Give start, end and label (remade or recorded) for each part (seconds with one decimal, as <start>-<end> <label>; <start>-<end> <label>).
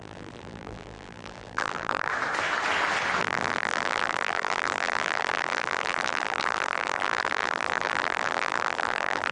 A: 0.0-2.1 remade; 2.1-3.2 recorded; 3.2-9.3 remade